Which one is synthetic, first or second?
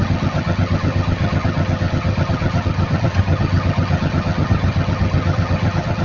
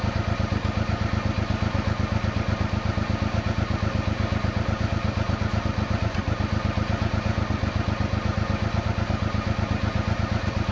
first